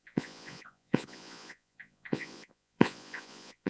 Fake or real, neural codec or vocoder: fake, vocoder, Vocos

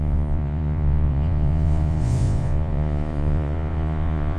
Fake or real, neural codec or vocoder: fake, vocoder, Vocos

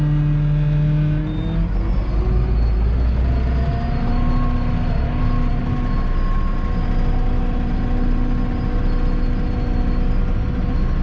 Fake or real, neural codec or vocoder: real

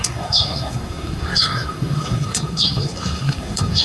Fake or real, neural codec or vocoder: fake, codec, SNAC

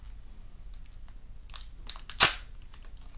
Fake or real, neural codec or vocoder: real